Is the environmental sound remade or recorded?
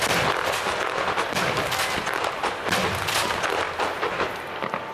recorded